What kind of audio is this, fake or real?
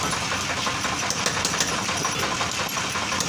real